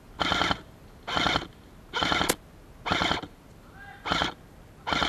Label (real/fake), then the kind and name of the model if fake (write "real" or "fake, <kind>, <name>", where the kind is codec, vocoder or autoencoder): real